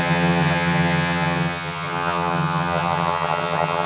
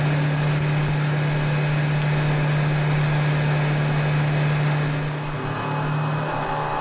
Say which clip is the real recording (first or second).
second